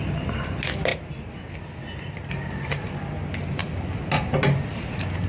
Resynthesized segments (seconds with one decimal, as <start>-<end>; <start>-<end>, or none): none